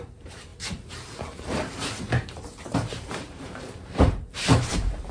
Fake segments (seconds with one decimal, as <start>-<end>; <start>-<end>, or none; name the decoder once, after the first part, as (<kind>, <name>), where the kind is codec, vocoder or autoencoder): 0.0-5.1 (vocoder, BigVGAN v2)